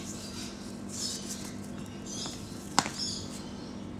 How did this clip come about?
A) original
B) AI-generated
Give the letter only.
A